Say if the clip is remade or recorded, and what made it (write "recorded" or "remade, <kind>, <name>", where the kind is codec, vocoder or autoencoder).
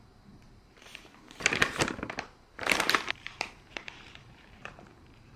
remade, vocoder, BigVGAN v2